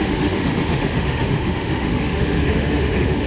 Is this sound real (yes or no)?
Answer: no